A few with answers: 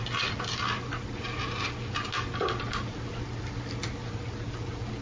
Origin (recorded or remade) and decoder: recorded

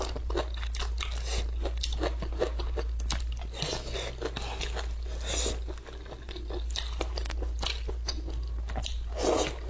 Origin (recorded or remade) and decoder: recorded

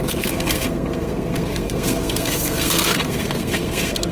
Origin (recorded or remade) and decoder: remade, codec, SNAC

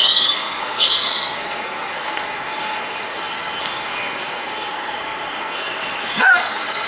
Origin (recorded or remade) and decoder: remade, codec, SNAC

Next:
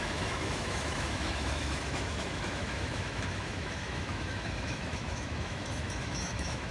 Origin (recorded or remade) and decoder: remade, autoencoder, DAC-VAE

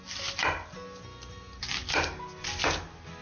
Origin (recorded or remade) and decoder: recorded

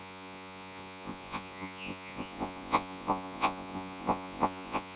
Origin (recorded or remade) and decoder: remade, vocoder, Vocos